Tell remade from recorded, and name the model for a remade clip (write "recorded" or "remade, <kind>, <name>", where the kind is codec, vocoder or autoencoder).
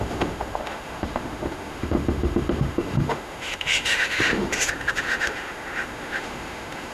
remade, autoencoder, DAC-VAE